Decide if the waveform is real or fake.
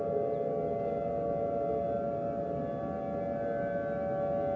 real